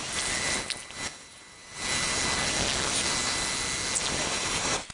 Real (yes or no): yes